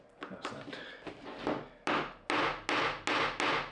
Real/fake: real